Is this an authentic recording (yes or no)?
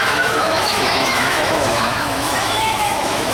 no